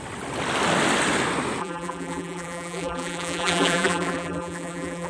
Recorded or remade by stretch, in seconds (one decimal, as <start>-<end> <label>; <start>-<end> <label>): 0.0-1.6 recorded; 1.6-5.1 remade